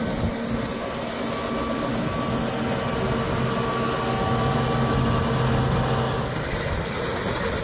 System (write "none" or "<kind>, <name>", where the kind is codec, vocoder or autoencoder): none